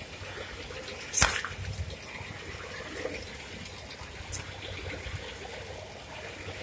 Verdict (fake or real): real